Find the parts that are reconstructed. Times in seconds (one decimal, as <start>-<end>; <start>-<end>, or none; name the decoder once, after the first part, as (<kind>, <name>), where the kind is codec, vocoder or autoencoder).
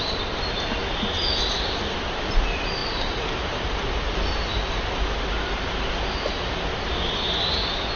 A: none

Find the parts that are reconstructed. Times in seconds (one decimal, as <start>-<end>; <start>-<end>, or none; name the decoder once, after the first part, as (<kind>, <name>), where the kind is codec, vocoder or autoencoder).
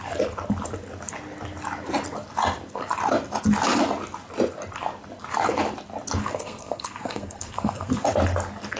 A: 6.2-7.9 (codec, SNAC)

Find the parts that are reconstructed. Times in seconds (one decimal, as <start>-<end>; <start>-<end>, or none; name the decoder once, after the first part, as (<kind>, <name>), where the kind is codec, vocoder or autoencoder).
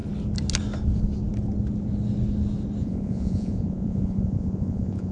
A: 2.8-5.1 (vocoder, Vocos)